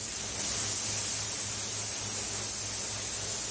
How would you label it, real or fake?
real